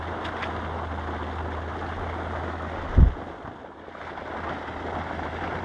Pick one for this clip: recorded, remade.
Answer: recorded